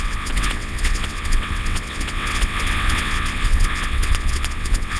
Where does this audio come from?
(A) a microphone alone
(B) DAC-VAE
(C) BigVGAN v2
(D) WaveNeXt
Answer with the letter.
D